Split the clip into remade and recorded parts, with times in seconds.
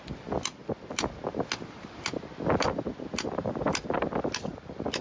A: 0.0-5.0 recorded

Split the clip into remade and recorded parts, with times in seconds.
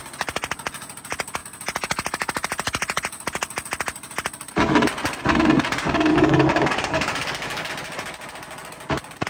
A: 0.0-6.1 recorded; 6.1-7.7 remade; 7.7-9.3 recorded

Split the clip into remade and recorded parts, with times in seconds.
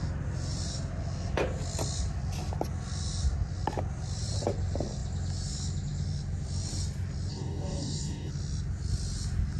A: 0.0-7.3 recorded; 7.3-8.3 remade; 8.3-9.6 recorded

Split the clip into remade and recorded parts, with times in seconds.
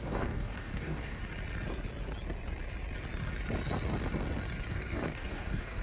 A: 0.0-1.2 remade; 1.2-4.7 recorded; 4.7-5.8 remade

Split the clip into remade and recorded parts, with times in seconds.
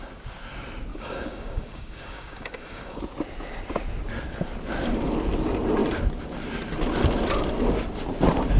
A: 0.0-0.9 recorded; 0.9-3.0 remade; 3.0-8.6 recorded